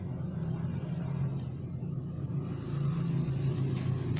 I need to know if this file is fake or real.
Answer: real